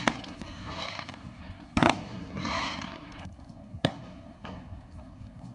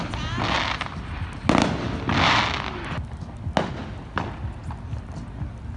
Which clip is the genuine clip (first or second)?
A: second